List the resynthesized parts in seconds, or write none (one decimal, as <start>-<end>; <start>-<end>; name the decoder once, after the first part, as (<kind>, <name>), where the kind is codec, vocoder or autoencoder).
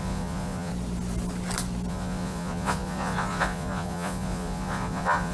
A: 0.0-0.7 (vocoder, Vocos); 1.9-5.3